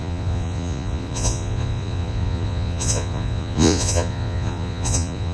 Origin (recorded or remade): remade